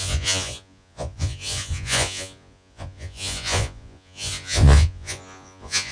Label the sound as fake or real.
fake